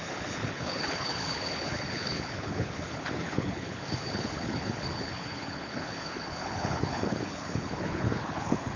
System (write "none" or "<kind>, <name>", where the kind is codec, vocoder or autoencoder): codec, HILCodec